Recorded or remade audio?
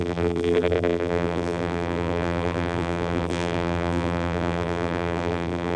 remade